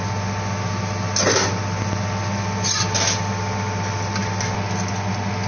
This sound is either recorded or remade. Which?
recorded